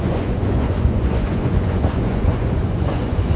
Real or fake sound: fake